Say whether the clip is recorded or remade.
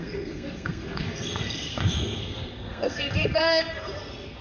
remade